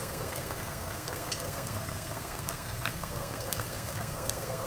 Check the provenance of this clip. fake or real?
fake